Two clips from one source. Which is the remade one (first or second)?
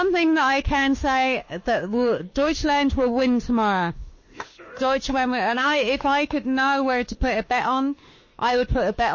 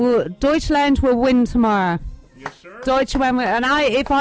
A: first